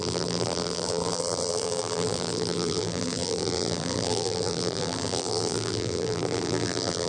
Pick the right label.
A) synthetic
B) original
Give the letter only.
A